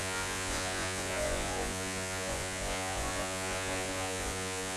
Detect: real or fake fake